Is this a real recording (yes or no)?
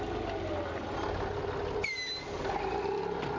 yes